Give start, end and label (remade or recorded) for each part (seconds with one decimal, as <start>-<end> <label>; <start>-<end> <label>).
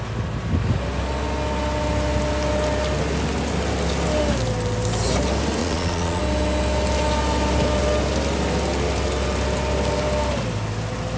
0.0-5.6 recorded; 5.6-6.2 remade; 6.2-11.2 recorded